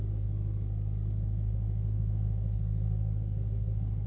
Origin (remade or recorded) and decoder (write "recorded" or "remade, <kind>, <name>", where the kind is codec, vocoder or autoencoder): remade, codec, SNAC